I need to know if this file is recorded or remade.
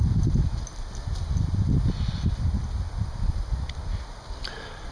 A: recorded